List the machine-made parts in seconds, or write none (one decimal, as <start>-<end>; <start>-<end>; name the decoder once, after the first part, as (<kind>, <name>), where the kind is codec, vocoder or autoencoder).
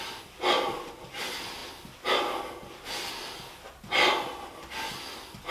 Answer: none